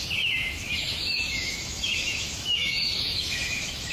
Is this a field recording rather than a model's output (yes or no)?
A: no